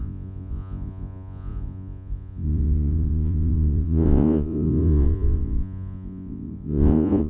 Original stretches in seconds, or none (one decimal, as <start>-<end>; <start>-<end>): none